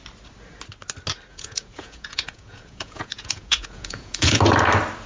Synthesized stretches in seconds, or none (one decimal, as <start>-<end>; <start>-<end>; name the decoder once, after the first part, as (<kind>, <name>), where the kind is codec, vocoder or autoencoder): 1.3-4.4 (vocoder, Vocos)